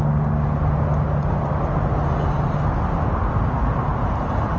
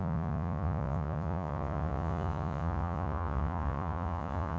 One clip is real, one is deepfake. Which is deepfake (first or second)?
second